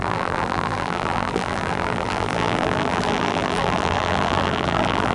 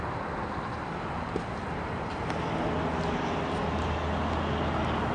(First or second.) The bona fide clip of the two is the second